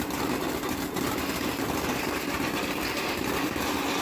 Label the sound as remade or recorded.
remade